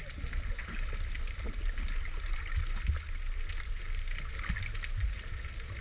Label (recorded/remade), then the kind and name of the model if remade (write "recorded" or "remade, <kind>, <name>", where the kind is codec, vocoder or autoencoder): recorded